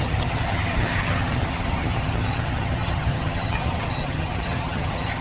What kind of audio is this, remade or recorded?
remade